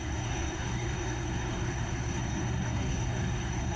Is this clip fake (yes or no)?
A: yes